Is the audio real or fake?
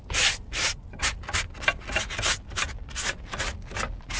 real